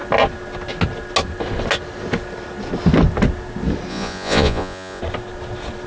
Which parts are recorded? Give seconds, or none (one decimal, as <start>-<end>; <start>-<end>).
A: 0.0-3.9; 5.0-5.9

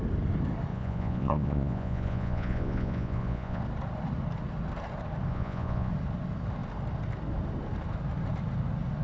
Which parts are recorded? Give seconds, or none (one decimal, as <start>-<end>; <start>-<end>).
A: 0.0-0.7; 3.6-5.3; 5.9-9.0

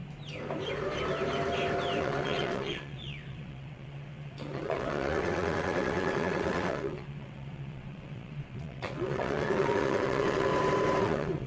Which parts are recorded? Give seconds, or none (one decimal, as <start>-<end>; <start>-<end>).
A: 0.0-2.0; 10.5-11.0

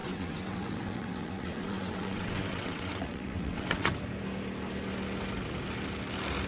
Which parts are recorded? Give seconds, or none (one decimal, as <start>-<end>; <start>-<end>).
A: 3.9-6.5

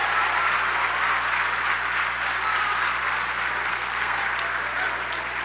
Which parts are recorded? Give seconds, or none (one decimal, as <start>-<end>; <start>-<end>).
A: 0.0-3.7; 4.2-5.4

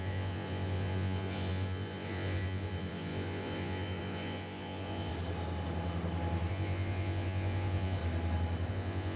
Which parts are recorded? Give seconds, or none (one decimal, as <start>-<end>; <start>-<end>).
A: 5.1-6.5; 8.0-8.7